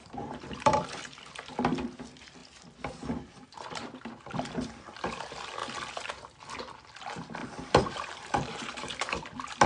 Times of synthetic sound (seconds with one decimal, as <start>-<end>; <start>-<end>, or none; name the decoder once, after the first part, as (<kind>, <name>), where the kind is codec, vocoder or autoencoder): 0.0-1.0 (vocoder, BigVGAN v2); 7.4-8.9

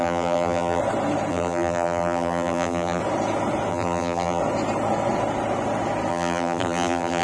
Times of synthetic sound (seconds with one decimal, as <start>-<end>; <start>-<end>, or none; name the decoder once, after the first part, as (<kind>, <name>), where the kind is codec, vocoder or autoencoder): 0.0-0.8 (vocoder, BigVGAN v2); 1.3-3.0; 3.7-4.4; 6.1-7.2

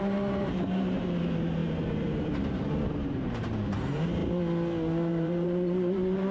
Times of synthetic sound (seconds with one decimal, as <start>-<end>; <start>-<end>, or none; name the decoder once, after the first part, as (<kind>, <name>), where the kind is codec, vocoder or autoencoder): 0.0-4.2 (vocoder, BigVGAN v2); 5.1-6.3

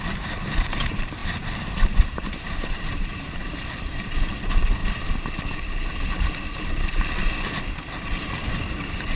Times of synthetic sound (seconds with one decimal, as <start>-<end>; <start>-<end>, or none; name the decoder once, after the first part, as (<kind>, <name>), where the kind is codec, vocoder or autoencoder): 0.0-4.8 (vocoder, BigVGAN v2); 6.6-7.2; 8.7-9.2

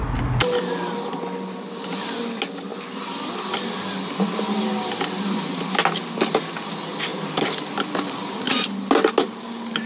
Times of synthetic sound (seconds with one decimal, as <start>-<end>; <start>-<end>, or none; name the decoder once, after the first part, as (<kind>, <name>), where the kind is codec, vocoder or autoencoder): none